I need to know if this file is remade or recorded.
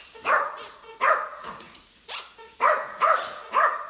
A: remade